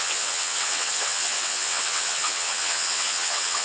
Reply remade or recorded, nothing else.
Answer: remade